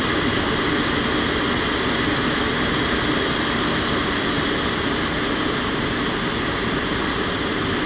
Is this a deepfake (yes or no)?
no